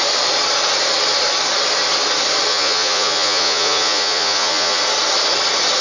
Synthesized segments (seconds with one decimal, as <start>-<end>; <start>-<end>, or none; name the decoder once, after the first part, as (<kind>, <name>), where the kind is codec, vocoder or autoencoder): 2.5-4.8 (vocoder, Vocos)